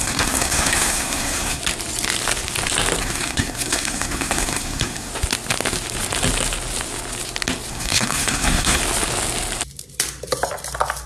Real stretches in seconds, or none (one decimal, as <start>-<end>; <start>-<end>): 1.6-3.0; 5.1-7.7; 8.8-11.1